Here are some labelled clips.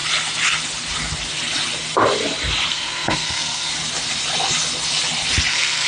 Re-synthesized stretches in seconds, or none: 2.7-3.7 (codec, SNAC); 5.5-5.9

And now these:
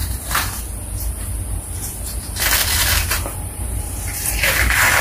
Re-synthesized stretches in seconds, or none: 0.0-0.6 (vocoder, BigVGAN v2); 2.6-5.0

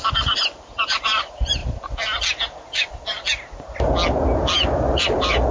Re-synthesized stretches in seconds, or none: 0.0-1.6 (vocoder, BigVGAN v2); 4.9-5.5